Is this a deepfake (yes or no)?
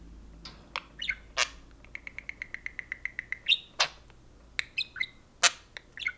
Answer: no